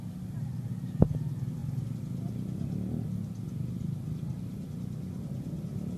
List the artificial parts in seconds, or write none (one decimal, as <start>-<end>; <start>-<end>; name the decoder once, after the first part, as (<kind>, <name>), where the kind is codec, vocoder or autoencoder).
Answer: none